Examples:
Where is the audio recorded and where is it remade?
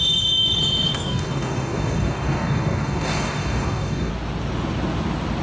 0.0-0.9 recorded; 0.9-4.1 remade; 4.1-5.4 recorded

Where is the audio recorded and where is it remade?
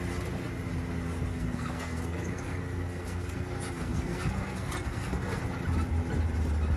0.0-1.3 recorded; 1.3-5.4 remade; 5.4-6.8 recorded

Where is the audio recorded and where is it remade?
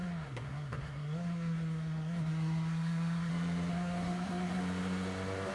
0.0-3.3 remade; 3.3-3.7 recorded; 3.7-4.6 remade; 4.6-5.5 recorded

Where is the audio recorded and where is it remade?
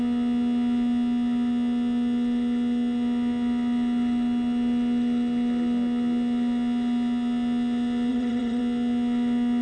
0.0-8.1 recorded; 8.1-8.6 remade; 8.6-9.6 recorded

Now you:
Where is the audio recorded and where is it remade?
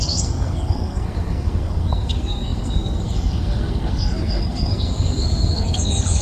0.0-6.2 remade